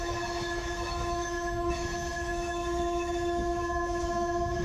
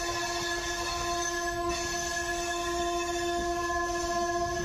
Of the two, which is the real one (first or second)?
second